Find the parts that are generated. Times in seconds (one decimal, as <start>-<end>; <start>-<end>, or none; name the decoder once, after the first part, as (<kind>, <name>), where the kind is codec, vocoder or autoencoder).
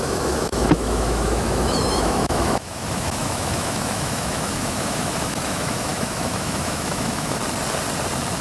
0.0-7.4 (autoencoder, DAC-VAE)